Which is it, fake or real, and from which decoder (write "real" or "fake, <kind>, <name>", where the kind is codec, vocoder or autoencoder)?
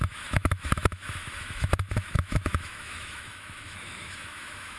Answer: fake, autoencoder, DAC-VAE